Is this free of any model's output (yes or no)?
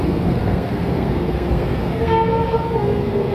no